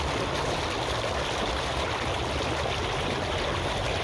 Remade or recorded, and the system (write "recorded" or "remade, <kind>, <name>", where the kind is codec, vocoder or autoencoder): recorded